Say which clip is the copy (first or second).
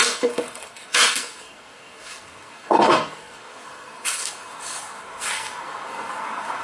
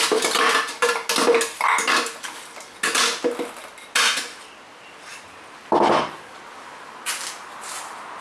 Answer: first